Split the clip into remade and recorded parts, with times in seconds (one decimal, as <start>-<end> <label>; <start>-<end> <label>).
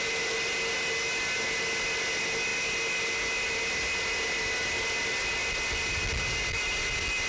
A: 0.0-7.3 recorded